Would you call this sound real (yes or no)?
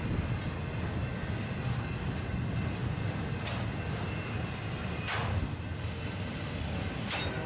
yes